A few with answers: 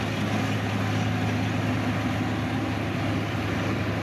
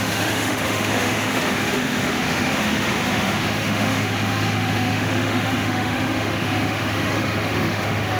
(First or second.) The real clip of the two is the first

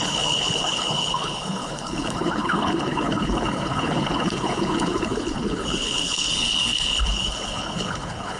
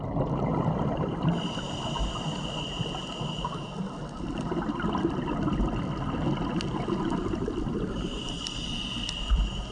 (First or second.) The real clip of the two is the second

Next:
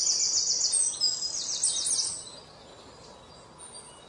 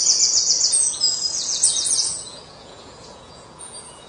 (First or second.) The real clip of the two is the first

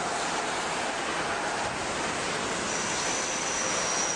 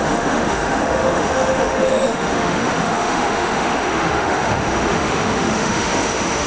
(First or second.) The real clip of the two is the first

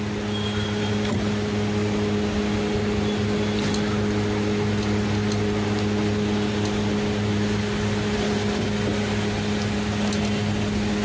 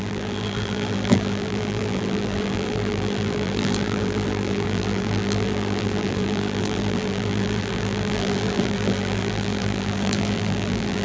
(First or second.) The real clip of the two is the first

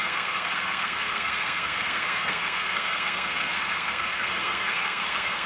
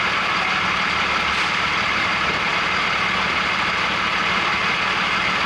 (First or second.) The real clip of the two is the second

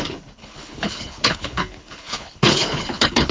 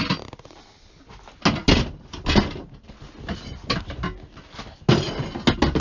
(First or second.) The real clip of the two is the second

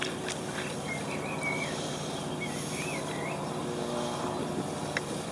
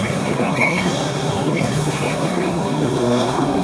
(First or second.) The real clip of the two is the first